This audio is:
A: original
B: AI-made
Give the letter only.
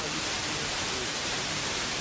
A